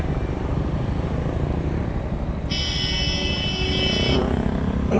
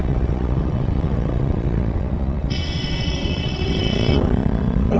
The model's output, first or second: second